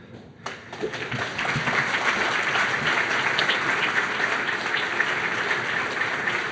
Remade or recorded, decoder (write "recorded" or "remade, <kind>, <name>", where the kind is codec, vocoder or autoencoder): recorded